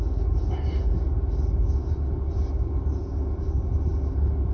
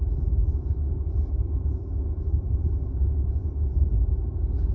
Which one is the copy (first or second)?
second